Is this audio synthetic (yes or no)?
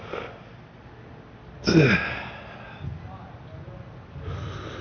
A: no